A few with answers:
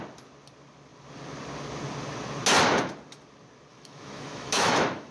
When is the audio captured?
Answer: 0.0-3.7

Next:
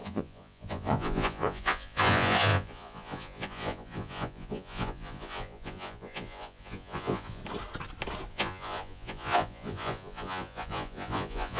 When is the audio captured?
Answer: 7.4-8.3